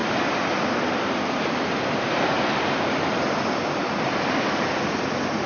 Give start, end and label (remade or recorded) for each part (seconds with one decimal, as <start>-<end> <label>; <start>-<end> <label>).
0.0-5.5 recorded